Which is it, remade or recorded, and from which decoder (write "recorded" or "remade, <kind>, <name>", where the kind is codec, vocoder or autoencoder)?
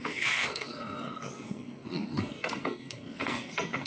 remade, codec, SNAC